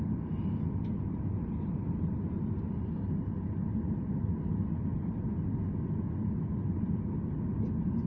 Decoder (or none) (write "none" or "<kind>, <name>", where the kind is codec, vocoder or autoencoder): none